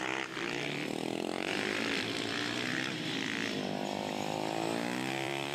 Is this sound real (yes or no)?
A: no